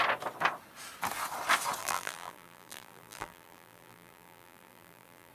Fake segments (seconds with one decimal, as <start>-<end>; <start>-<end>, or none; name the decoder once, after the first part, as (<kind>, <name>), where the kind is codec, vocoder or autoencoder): 1.8-5.3 (vocoder, BigVGAN v2)